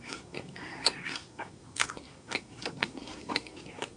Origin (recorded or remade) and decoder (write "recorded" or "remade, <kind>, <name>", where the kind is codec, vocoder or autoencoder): remade, codec, SNAC